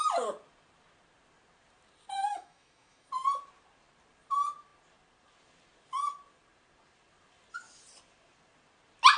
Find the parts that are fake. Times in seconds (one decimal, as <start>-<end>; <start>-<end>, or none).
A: 2.3-3.1